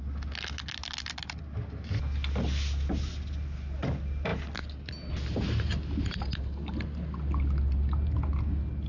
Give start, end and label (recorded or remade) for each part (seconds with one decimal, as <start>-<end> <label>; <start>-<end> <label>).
0.0-8.9 recorded